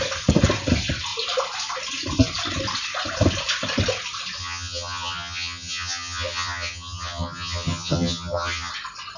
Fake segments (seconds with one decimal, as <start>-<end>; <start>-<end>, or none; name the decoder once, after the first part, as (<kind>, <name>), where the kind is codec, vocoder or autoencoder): 4.4-8.7 (vocoder, HiFi-GAN)